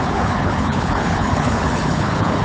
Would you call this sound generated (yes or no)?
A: yes